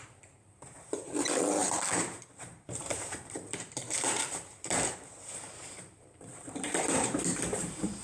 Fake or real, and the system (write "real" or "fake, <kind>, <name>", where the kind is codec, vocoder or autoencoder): fake, vocoder, BigVGAN v2